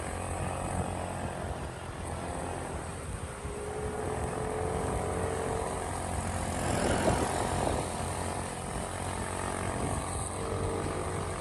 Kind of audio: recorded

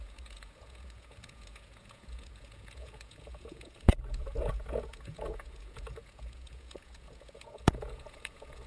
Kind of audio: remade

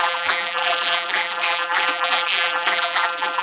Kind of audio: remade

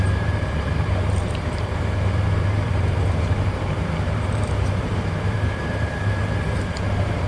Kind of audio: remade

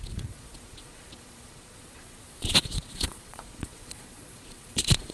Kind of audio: remade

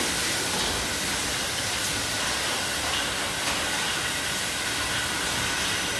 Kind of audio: recorded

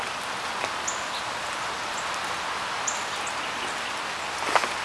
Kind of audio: recorded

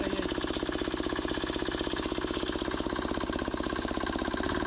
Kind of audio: recorded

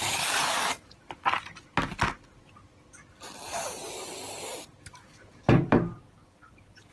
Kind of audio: recorded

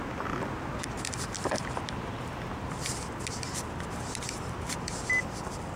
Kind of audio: recorded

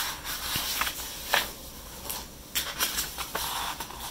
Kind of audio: recorded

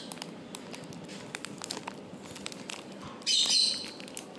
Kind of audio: recorded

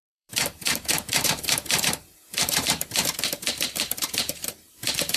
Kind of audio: remade